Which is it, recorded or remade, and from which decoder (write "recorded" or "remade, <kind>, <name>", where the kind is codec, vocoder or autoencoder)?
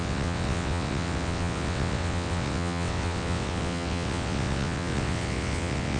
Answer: remade, vocoder, WaveNeXt